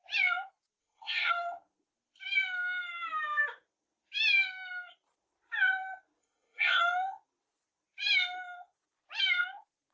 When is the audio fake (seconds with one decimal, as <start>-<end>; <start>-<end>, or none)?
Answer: 0.8-1.3; 6.2-6.8

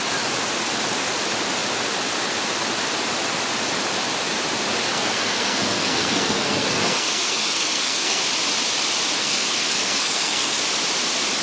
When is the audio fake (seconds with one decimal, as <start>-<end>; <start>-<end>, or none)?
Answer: 4.9-8.2; 9.2-10.6

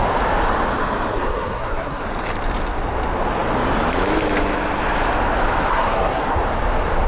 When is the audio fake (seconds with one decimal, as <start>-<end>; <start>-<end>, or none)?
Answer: 1.1-2.0; 5.7-6.4

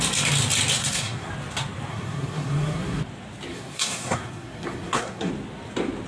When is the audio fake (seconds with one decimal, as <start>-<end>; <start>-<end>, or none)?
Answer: 0.8-1.3; 1.9-3.0; 3.5-5.3

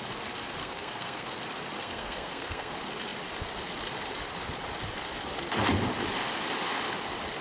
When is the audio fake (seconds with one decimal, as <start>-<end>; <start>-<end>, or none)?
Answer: 0.6-1.3; 1.8-2.7

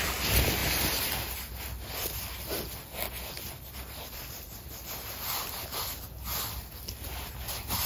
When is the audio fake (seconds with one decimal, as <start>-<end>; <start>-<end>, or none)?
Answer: none

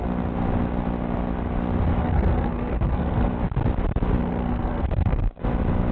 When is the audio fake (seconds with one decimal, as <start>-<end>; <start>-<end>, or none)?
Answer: 2.0-3.3; 4.2-5.4